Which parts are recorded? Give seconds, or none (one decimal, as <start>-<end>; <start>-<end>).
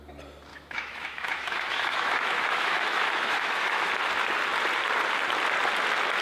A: 0.0-0.5; 3.9-6.2